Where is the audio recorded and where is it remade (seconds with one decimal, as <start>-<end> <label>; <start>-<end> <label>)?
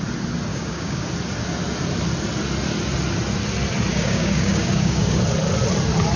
0.0-0.5 recorded; 0.5-1.1 remade; 1.1-3.9 recorded; 3.9-5.2 remade; 5.2-6.2 recorded